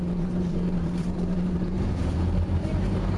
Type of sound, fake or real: fake